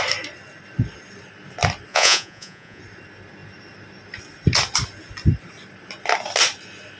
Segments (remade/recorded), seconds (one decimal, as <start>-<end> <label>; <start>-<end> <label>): 0.0-1.9 recorded; 1.9-2.8 remade; 2.8-7.0 recorded